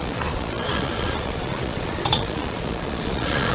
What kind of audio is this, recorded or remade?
remade